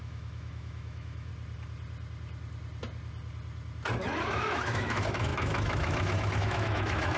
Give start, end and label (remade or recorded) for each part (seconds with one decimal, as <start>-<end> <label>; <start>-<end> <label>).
0.0-1.3 remade; 1.3-4.0 recorded; 4.0-7.2 remade